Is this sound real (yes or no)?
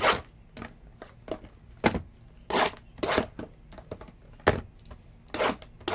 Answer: yes